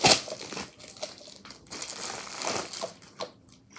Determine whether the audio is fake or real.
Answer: real